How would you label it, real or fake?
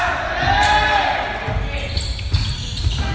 real